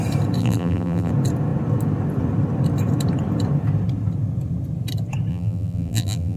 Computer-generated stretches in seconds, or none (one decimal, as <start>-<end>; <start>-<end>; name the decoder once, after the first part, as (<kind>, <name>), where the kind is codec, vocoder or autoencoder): 0.4-1.1 (vocoder, BigVGAN v2); 5.3-6.4

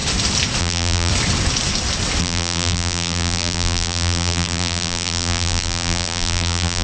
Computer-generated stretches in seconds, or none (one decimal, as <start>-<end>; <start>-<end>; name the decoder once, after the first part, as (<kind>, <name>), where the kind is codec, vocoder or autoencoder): 0.6-1.1 (vocoder, BigVGAN v2); 2.2-6.8

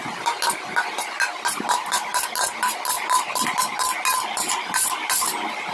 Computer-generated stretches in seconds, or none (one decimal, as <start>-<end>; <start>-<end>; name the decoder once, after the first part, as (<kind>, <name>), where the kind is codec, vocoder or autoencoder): none

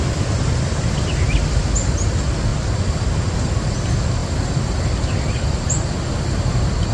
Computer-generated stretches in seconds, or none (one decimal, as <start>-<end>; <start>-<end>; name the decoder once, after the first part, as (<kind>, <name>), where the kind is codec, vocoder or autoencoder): none

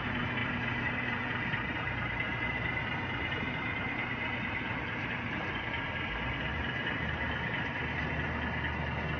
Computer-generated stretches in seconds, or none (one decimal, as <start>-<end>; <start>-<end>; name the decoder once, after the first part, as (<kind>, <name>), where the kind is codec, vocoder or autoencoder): 0.4-5.6 (vocoder, BigVGAN v2); 6.5-8.1

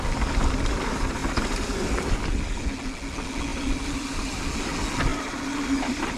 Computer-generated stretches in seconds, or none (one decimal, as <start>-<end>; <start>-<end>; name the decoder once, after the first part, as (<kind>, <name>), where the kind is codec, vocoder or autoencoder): 3.5-4.4 (vocoder, BigVGAN v2); 5.1-6.2

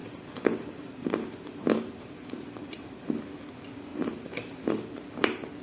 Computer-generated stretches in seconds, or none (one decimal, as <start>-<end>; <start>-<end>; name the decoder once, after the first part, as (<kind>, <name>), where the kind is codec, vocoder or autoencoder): 0.0-3.2 (vocoder, BigVGAN v2); 3.9-5.0

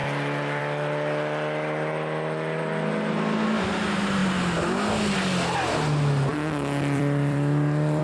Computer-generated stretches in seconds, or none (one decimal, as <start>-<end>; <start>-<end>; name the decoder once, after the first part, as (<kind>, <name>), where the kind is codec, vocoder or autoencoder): 6.3-8.0 (vocoder, BigVGAN v2)